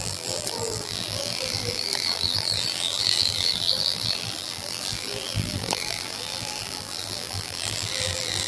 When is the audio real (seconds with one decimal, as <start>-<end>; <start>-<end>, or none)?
none